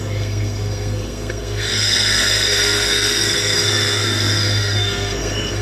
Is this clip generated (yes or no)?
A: yes